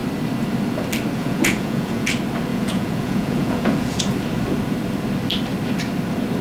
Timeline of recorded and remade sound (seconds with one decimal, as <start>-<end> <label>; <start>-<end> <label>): 0.0-1.2 recorded; 1.2-2.1 remade; 2.1-2.5 recorded; 2.5-4.0 remade; 4.0-6.4 recorded